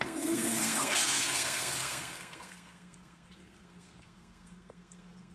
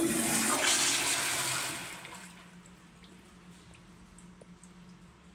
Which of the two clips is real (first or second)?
second